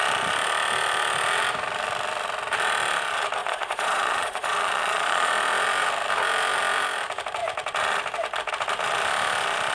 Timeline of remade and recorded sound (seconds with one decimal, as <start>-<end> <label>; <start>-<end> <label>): 0.0-3.4 recorded; 3.4-5.3 remade; 5.3-9.7 recorded